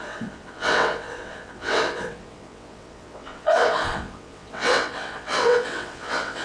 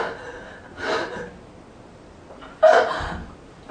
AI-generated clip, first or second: first